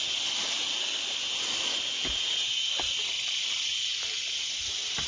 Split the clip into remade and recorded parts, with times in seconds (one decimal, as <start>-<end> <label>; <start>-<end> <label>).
0.0-5.1 recorded